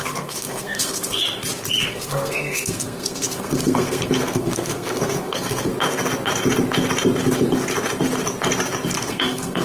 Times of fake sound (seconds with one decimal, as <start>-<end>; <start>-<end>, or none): 0.0-1.2; 1.8-5.7; 9.0-9.6